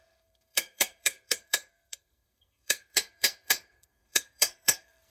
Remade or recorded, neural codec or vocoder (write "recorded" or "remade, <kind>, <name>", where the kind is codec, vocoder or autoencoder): remade, codec, SNAC